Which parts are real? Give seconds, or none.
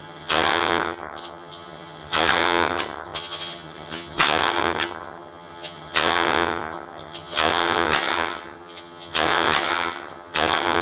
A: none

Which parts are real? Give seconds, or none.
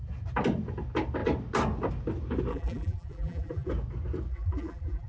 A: 0.0-2.5; 3.7-4.3